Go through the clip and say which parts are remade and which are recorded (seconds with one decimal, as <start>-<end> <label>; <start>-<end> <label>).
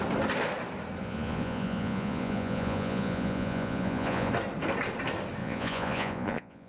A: 0.0-1.0 recorded; 1.0-4.3 remade; 4.3-5.4 recorded; 5.4-6.7 remade